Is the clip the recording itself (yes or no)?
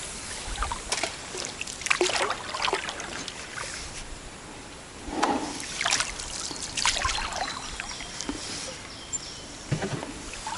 no